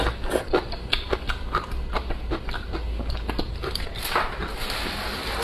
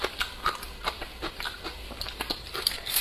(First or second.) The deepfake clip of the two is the second